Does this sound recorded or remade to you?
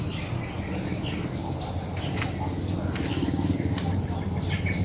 recorded